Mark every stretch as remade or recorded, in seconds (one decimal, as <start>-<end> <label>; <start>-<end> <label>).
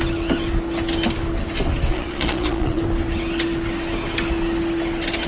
0.0-1.9 recorded; 1.9-2.8 remade; 2.8-5.3 recorded